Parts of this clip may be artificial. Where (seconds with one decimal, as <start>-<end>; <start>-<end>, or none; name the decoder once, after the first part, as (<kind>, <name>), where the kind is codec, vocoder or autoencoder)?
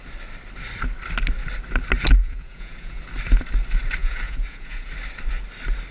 2.2-3.0 (vocoder, Vocos); 4.0-4.9